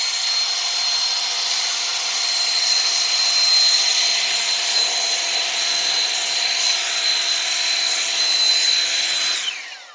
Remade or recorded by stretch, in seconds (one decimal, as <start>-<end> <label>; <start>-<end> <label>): 0.0-1.9 recorded; 1.9-3.5 remade; 3.5-3.9 recorded; 3.9-8.3 remade; 8.3-9.9 recorded